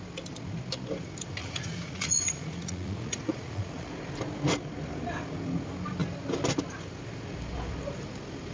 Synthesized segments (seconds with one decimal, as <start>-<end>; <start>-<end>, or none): 1.4-3.9